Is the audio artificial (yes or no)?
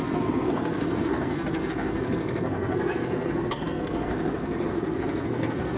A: yes